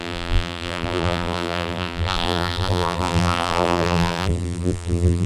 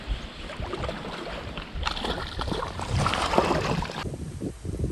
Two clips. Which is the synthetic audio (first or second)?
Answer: first